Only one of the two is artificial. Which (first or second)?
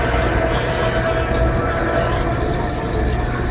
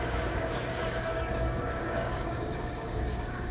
second